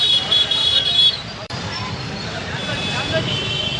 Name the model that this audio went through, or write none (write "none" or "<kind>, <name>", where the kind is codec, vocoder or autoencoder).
vocoder, BigVGAN v2